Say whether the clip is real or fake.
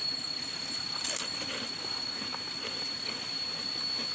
real